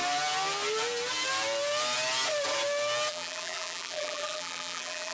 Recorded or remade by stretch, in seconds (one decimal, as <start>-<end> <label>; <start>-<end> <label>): 0.0-3.1 recorded; 3.1-5.1 remade